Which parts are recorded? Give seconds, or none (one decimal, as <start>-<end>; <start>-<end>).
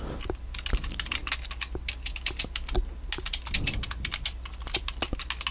0.0-5.5